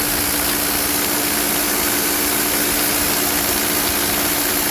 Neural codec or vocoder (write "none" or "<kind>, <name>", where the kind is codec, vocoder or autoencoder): none